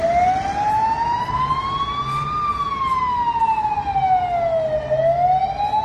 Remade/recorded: recorded